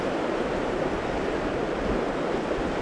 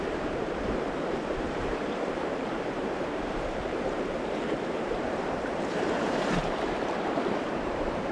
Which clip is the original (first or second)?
first